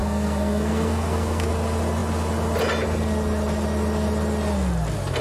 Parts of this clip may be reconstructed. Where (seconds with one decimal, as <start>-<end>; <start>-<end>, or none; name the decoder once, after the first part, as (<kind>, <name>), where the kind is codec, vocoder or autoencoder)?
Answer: 0.0-1.5 (codec, SNAC)

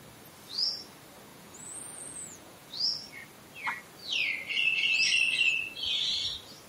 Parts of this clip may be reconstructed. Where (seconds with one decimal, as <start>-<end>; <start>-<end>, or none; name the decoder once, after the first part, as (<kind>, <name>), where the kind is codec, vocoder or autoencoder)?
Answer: 1.3-2.7 (vocoder, Vocos)

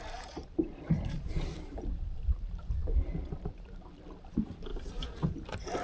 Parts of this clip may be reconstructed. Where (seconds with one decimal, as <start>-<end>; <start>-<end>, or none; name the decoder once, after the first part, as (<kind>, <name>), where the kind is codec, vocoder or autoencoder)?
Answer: 0.0-4.7 (vocoder, BigVGAN v2)

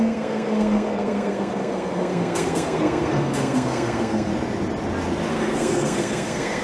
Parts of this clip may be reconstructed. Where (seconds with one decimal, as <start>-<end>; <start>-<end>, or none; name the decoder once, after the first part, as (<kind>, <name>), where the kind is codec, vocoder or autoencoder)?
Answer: 0.0-4.3 (codec, SNAC); 5.3-6.6

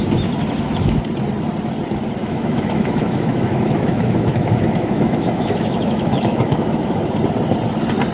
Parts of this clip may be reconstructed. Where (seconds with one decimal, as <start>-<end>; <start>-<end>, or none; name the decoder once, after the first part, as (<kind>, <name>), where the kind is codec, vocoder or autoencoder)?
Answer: 2.2-7.1 (autoencoder, DAC-VAE)